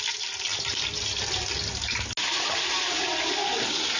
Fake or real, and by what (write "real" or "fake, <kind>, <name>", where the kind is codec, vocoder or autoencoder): real